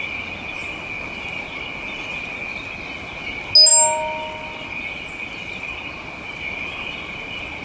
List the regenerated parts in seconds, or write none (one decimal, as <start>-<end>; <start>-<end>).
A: none